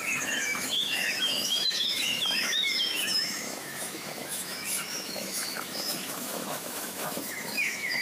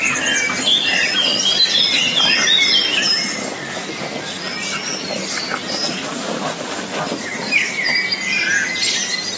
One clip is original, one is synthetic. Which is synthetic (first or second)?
first